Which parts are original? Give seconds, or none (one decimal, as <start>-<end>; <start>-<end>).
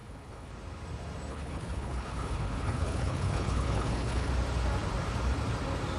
0.5-1.3; 4.3-6.0